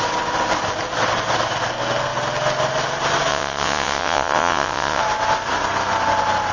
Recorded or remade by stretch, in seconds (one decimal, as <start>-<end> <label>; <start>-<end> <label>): 0.0-3.3 recorded; 3.3-5.0 remade; 5.0-6.5 recorded